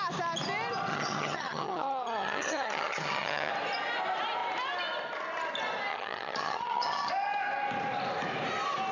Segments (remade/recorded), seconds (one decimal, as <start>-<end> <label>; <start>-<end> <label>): 0.0-0.9 recorded; 0.9-3.5 remade; 3.5-5.9 recorded; 5.9-7.1 remade; 7.1-8.9 recorded